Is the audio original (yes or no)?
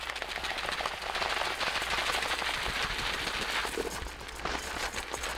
yes